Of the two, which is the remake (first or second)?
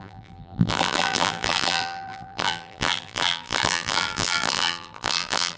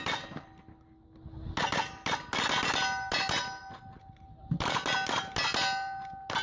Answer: first